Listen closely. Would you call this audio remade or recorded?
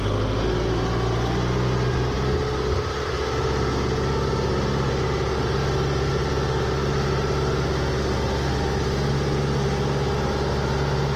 recorded